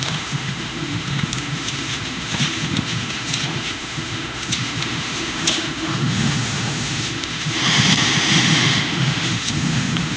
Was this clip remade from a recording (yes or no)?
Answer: yes